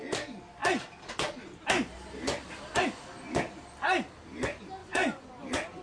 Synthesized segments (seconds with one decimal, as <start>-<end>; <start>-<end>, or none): 4.8-5.3